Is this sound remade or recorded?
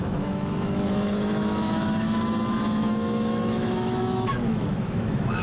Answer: remade